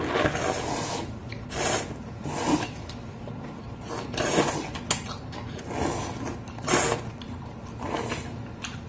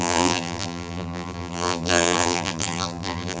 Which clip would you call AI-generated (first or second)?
second